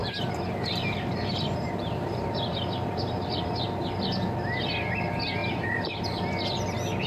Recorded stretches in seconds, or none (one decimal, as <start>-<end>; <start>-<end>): 3.6-5.4; 6.2-7.1